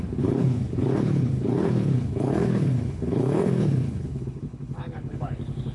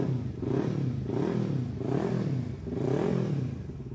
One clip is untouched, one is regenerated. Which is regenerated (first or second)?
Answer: first